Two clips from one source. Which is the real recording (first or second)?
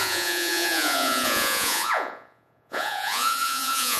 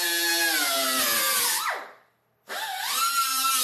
second